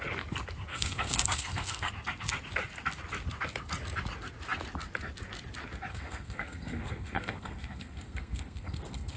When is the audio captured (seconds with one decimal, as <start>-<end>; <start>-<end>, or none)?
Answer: 0.0-0.7; 1.9-5.9